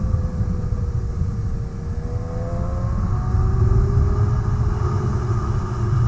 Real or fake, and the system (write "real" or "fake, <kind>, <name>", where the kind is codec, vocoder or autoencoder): real